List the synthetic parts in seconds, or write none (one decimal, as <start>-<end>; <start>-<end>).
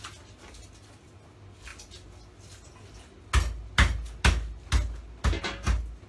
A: none